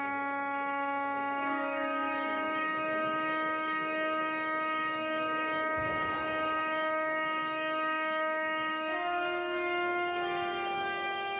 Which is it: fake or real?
fake